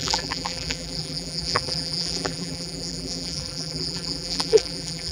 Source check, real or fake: fake